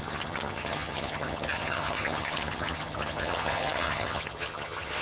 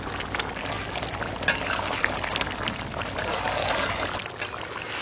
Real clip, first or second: second